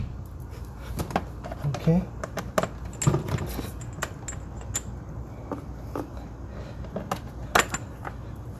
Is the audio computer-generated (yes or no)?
no